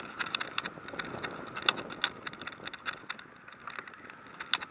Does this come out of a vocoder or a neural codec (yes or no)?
no